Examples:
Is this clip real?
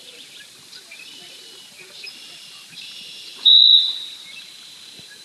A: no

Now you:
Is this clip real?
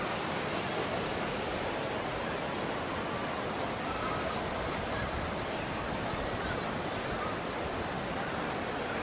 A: yes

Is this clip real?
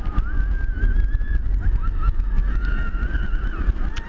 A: yes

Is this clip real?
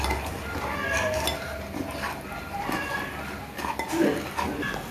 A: yes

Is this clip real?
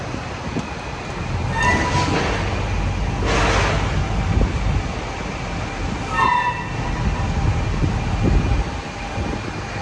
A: yes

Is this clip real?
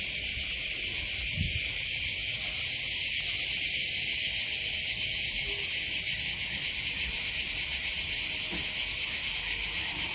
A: yes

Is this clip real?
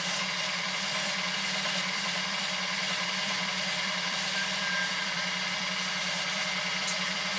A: no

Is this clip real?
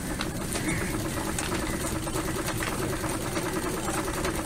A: no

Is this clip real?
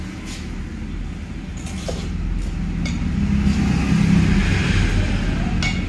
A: yes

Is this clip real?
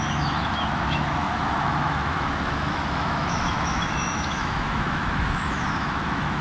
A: no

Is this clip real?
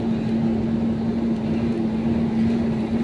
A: yes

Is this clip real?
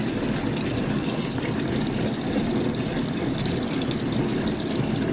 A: no